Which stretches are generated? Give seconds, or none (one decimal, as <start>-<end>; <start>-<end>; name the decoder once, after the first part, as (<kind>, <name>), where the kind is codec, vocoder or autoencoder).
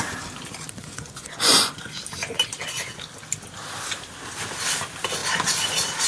0.8-2.0 (vocoder, Vocos)